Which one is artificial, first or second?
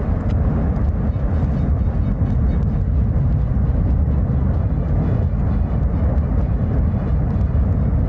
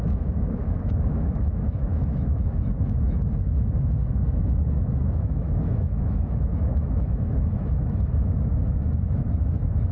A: second